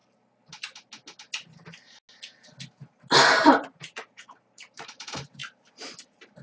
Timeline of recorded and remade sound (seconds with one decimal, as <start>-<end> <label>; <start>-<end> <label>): 0.0-3.8 recorded; 3.8-5.4 remade; 5.4-6.0 recorded; 6.0-6.4 remade